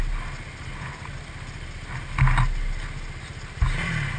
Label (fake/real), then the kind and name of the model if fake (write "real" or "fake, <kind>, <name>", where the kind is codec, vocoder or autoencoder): real